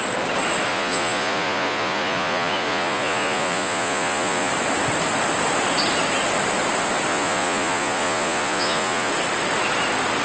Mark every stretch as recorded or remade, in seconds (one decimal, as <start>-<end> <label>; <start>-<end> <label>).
0.0-0.7 recorded; 0.7-4.5 remade; 4.5-7.1 recorded; 7.1-9.1 remade; 9.1-10.2 recorded